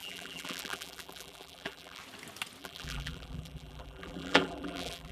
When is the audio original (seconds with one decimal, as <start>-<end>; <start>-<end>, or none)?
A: 2.0-2.6